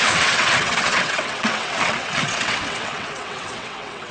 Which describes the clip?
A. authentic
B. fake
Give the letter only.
B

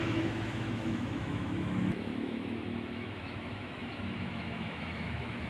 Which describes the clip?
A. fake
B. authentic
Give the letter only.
A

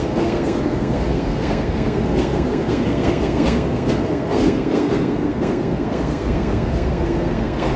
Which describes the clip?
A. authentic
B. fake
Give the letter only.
B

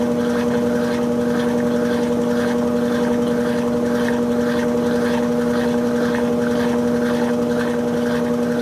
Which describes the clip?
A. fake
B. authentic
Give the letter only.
B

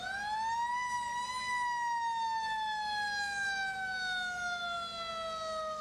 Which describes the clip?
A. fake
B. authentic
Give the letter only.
B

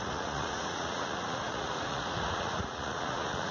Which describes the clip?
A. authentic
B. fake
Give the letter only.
B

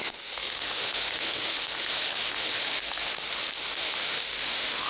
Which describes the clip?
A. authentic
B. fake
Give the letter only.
B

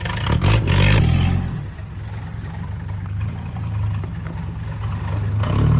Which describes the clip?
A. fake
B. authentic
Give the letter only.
B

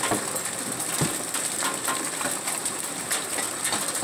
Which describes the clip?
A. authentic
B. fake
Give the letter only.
A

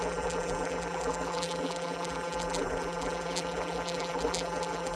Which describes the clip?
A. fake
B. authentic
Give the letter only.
A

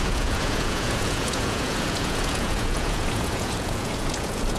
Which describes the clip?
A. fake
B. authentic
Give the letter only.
A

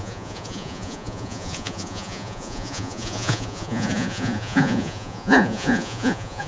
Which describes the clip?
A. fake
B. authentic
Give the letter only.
A